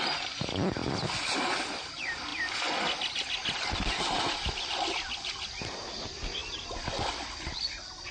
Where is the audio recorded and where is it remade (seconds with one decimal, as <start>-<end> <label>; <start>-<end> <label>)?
0.0-8.1 recorded